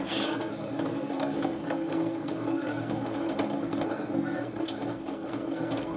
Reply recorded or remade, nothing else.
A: remade